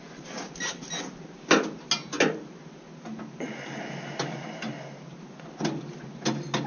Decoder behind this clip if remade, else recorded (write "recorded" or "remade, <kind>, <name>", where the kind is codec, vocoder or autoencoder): recorded